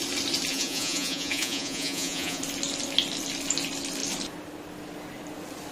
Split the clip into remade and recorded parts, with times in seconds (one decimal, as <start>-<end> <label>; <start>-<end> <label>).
0.0-0.5 recorded; 0.5-2.4 remade; 2.4-5.7 recorded